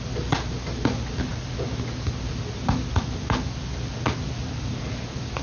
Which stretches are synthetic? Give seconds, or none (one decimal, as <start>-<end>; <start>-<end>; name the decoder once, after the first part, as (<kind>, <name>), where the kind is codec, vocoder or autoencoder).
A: none